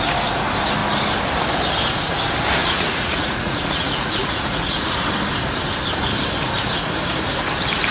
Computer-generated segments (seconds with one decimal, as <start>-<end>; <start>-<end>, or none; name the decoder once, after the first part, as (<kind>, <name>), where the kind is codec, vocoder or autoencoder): 2.6-5.0 (vocoder, Vocos)